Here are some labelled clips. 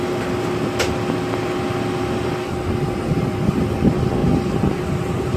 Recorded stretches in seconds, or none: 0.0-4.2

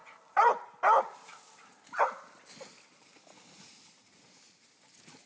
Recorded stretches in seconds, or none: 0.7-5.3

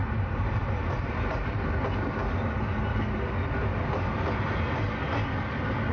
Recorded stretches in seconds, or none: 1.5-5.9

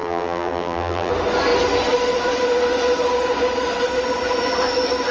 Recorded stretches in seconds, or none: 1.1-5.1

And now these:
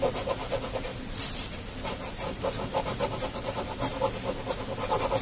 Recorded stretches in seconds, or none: 0.0-0.9; 4.0-5.2